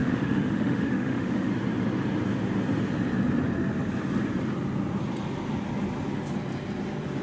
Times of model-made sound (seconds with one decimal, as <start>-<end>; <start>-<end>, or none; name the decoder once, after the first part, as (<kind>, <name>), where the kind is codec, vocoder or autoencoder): 0.0-1.5 (autoencoder, DAC-VAE)